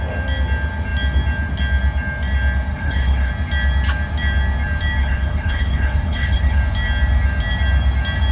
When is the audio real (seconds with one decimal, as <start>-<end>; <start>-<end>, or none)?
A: 0.0-2.7; 3.3-5.0; 6.6-8.3